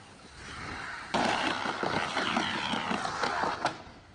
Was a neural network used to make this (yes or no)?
no